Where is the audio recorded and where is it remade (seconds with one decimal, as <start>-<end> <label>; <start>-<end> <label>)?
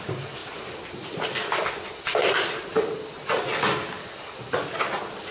0.0-5.3 recorded